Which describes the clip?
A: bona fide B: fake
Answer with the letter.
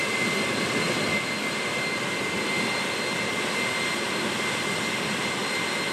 A